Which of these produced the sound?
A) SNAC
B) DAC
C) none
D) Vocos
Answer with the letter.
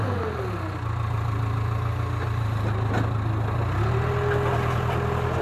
C